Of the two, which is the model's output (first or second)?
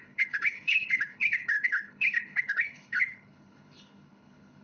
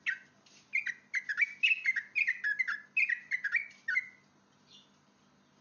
first